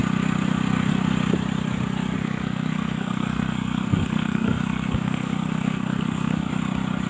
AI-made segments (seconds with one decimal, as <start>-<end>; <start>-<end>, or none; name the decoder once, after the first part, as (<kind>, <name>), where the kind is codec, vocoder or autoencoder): 2.2-6.5 (codec, SNAC)